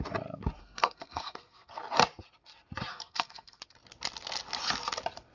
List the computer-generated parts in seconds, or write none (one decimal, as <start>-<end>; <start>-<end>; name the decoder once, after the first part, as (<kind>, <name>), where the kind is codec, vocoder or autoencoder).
0.6-1.7 (codec, SNAC); 2.9-3.6